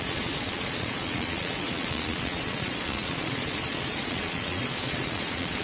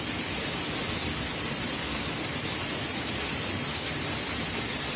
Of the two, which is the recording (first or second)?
second